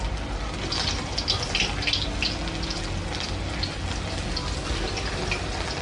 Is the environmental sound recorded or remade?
recorded